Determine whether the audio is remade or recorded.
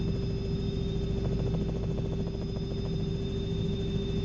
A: recorded